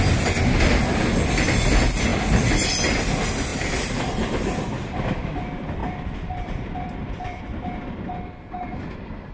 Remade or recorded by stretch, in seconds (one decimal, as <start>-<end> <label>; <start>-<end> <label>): 0.0-3.5 recorded; 3.5-5.0 remade; 5.0-5.8 recorded; 5.8-7.4 remade; 7.4-9.3 recorded